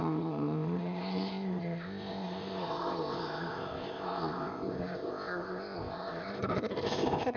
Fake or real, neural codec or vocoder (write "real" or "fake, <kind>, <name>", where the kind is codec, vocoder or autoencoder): fake, codec, ZipCodec